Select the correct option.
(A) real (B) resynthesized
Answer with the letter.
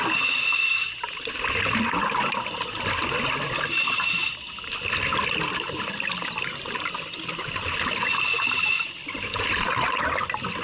A